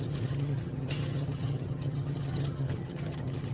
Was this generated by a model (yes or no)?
yes